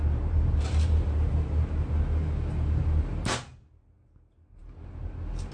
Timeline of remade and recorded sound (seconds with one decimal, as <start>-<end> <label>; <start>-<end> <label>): 0.0-5.5 recorded

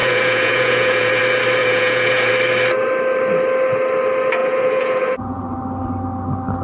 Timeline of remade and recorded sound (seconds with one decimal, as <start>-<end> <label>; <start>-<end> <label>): 0.0-1.2 remade; 1.2-1.6 recorded; 1.6-2.3 remade; 2.3-4.4 recorded; 4.4-5.4 remade; 5.4-6.6 recorded

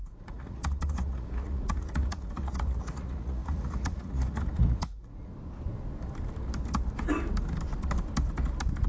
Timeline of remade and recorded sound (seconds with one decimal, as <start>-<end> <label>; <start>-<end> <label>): 0.0-5.3 remade; 5.3-8.9 recorded

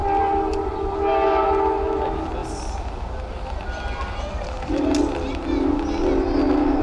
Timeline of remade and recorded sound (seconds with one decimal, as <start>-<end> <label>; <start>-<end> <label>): 0.0-6.8 recorded

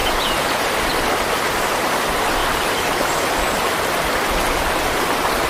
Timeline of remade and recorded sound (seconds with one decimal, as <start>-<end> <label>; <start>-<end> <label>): 0.0-0.7 remade; 0.7-5.5 recorded

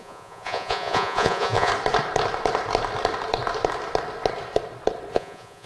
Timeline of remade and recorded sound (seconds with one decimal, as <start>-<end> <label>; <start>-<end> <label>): 0.0-1.7 remade; 1.7-5.1 recorded; 5.1-5.7 remade

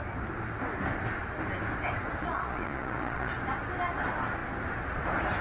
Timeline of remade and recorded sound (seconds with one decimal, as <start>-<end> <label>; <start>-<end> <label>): 0.0-2.2 recorded; 2.2-3.3 remade; 3.3-5.4 recorded

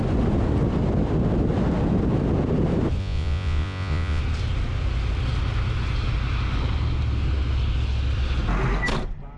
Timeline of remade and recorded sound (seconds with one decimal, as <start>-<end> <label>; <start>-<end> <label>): 0.0-3.0 recorded; 3.0-4.2 remade; 4.2-9.4 recorded